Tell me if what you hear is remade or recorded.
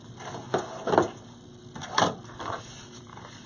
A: recorded